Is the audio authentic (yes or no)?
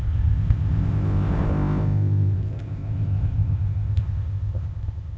no